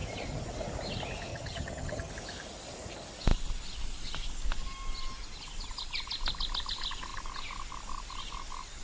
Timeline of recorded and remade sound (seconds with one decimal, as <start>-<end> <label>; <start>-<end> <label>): 0.0-1.3 recorded; 1.3-2.1 remade; 2.1-8.8 recorded